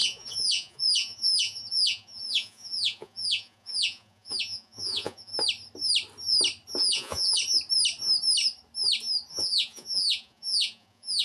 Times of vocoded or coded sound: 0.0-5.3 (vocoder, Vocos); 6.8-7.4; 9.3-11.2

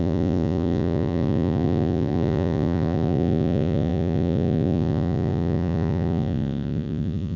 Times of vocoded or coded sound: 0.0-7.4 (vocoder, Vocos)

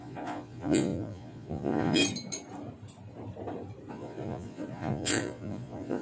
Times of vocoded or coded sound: 0.0-2.0 (vocoder, Vocos); 3.9-6.0

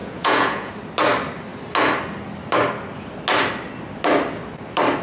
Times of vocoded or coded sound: 0.0-0.7 (vocoder, Vocos)